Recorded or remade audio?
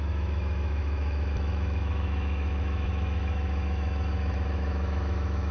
remade